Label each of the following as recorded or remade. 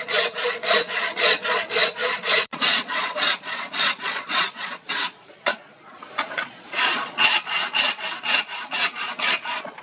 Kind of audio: remade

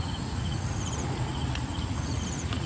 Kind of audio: remade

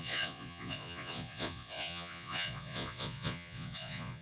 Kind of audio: remade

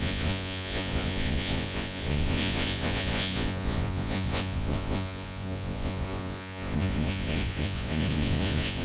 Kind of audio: remade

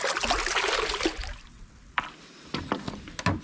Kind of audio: recorded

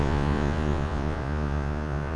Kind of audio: remade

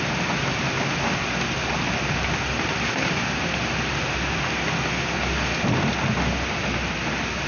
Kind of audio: recorded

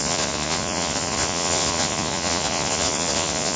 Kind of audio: remade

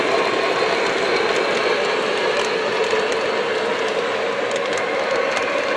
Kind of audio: recorded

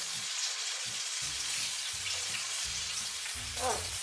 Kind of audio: remade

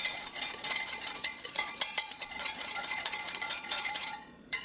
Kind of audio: remade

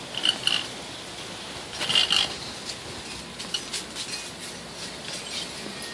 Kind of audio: recorded